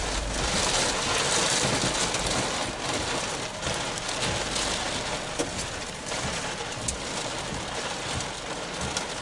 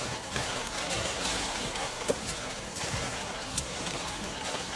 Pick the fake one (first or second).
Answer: second